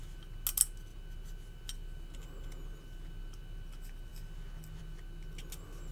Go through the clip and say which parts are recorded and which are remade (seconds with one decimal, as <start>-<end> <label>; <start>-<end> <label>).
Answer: 0.0-5.9 recorded